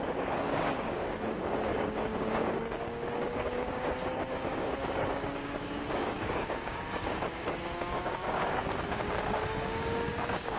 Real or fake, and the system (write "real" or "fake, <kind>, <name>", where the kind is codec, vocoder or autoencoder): fake, codec, DAC